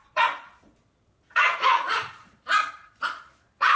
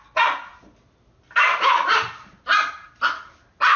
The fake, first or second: first